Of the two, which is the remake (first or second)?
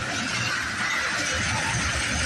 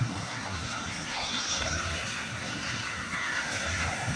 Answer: second